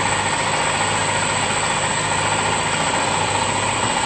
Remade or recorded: recorded